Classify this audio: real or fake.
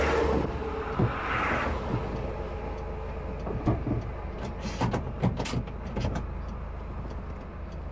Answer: real